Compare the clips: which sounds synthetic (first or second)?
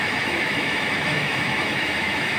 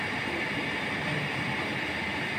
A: first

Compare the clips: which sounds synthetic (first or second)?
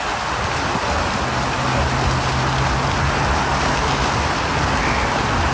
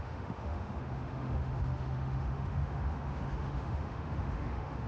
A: second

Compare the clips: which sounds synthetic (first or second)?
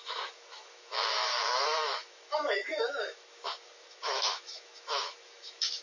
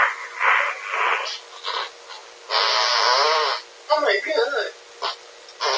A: first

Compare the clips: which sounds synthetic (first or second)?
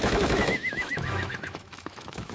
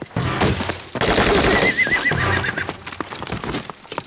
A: first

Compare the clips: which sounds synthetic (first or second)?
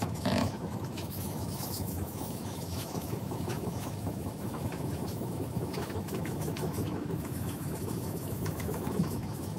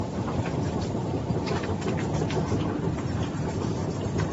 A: first